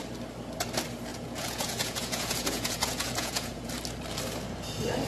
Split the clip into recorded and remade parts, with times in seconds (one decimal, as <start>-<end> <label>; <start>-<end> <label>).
0.0-1.1 recorded; 1.1-3.7 remade; 3.7-5.1 recorded